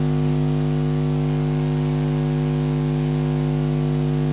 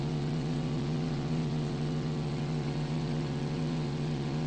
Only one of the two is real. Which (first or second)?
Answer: first